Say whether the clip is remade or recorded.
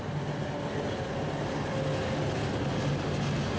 recorded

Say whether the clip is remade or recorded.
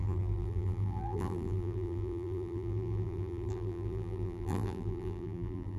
remade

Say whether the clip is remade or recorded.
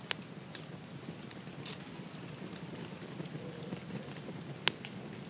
recorded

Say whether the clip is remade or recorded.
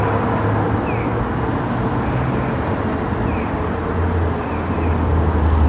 recorded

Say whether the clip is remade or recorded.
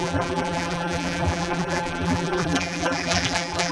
remade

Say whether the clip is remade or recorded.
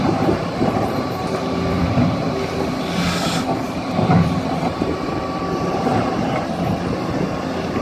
remade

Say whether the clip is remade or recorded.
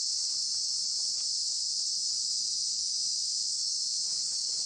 recorded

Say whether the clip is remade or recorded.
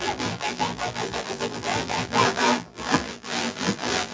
remade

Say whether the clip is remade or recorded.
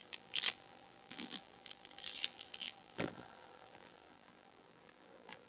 remade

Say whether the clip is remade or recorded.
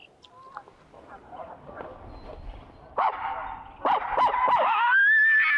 recorded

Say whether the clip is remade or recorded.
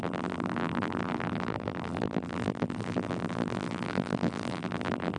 remade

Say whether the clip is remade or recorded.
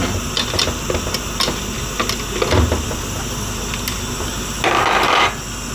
recorded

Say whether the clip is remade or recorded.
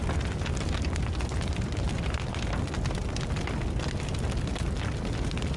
recorded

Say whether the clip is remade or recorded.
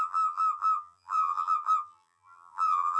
remade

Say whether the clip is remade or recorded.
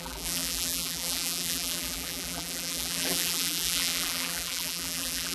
remade